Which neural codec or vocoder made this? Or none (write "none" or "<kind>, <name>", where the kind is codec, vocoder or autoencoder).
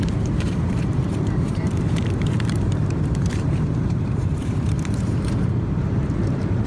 vocoder, BigVGAN v2